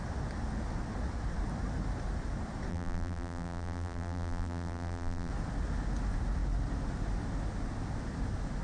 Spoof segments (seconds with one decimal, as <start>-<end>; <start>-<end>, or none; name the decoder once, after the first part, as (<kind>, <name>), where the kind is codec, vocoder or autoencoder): 2.7-5.3 (vocoder, BigVGAN v2)